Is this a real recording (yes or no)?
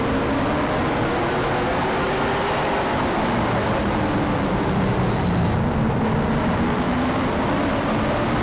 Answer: yes